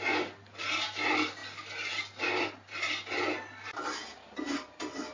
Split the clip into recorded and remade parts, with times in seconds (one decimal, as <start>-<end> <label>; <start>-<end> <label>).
0.0-5.1 recorded